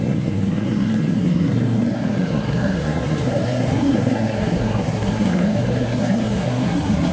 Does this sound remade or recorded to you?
remade